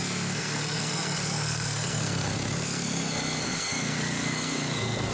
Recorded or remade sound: remade